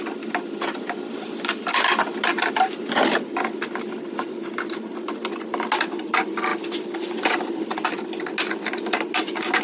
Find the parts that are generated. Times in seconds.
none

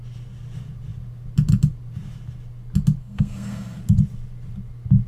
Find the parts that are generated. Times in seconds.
3.0-3.8 (codec, SNAC)